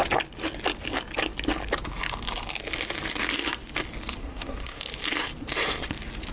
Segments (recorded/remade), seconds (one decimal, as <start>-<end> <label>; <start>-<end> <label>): 0.0-4.2 recorded; 4.2-4.8 remade; 4.8-6.3 recorded